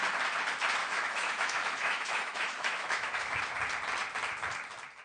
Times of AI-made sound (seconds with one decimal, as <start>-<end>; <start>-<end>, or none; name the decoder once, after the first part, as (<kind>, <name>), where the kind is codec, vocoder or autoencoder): 0.8-3.4 (autoencoder, DAC-VAE)